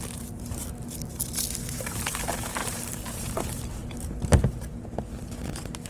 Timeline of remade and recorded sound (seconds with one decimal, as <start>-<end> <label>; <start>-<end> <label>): 0.0-1.6 recorded; 1.6-2.1 remade; 2.1-2.6 recorded; 2.6-3.6 remade; 3.6-5.9 recorded